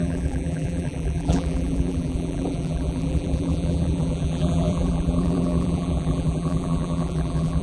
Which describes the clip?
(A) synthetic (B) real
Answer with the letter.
A